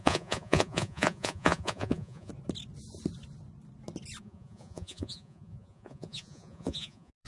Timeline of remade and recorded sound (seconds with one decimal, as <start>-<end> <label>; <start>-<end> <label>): 0.0-2.3 remade; 2.3-4.2 recorded; 4.2-7.3 remade